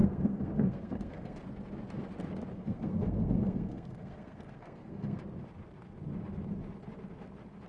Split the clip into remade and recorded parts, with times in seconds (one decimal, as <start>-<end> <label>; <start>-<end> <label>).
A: 0.0-1.4 remade; 1.4-2.5 recorded; 2.5-5.2 remade; 5.2-7.7 recorded